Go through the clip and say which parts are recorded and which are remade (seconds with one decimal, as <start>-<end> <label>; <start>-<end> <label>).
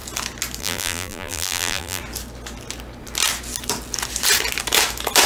0.0-0.6 recorded; 0.6-2.0 remade; 2.0-5.3 recorded